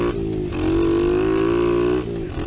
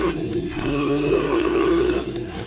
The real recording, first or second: first